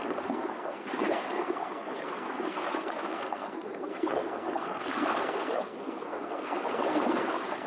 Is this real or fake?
fake